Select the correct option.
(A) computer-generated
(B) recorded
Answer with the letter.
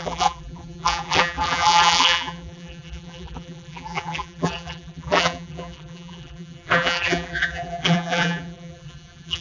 A